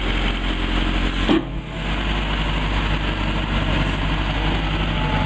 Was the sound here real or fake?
real